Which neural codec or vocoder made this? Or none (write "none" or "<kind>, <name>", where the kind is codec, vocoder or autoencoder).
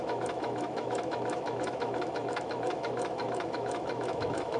autoencoder, DAC-VAE